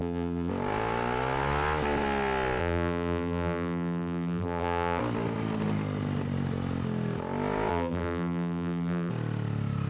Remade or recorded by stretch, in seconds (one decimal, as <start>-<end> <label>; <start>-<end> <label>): 0.0-0.5 remade; 0.5-2.6 recorded; 2.6-5.0 remade; 5.0-7.7 recorded; 7.7-9.1 remade; 9.1-9.9 recorded